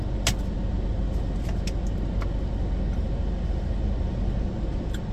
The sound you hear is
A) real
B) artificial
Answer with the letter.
A